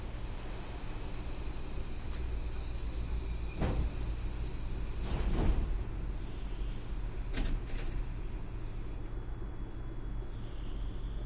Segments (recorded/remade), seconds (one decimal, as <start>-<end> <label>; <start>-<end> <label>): 0.0-11.3 recorded

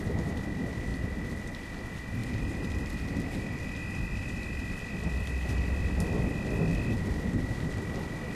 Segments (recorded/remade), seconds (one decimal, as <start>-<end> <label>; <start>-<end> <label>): 0.0-8.3 recorded

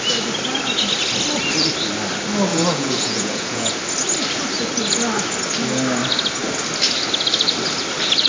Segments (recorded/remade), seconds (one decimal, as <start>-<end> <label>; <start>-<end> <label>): 0.0-2.5 recorded; 2.5-3.7 remade; 3.7-8.3 recorded

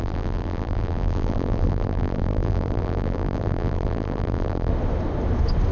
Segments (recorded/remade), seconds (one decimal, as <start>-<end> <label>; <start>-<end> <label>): 0.0-4.7 remade; 4.7-5.7 recorded

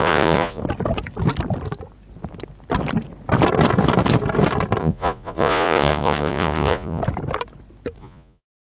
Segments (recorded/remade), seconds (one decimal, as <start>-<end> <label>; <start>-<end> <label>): 0.0-0.6 remade; 0.6-4.8 recorded; 4.8-7.0 remade; 7.0-8.0 recorded; 8.0-8.6 remade

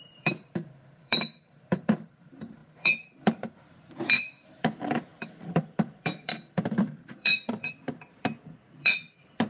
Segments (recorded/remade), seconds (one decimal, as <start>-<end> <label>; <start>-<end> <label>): 0.0-9.5 remade